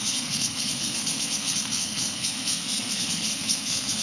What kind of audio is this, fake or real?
fake